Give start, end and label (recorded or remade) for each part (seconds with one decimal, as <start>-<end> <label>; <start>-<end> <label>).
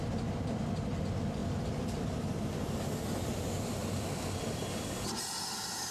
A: 0.0-1.4 recorded; 1.4-3.0 remade; 3.0-5.9 recorded